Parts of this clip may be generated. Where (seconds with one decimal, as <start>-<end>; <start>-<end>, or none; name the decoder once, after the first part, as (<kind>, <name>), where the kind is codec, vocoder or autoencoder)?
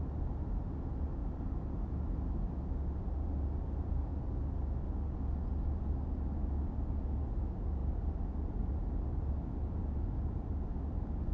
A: 7.8-8.7 (vocoder, BigVGAN v2)